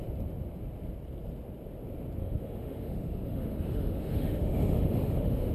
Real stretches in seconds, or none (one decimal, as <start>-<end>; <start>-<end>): 0.0-2.2